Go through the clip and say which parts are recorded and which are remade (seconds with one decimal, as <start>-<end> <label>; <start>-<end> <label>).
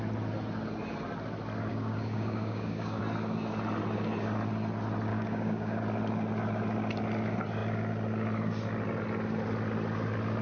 0.0-1.7 recorded; 1.7-3.0 remade; 3.0-5.1 recorded; 5.1-5.8 remade; 5.8-10.4 recorded